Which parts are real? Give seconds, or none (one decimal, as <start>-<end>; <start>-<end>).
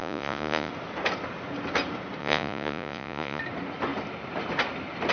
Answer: 0.7-2.2; 3.4-5.1